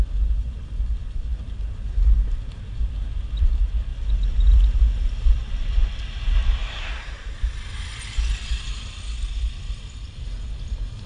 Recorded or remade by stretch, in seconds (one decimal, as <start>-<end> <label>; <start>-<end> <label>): 0.0-6.4 recorded; 6.4-7.5 remade; 7.5-11.1 recorded